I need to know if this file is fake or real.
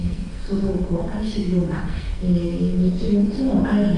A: fake